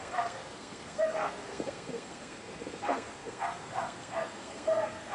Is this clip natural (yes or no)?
no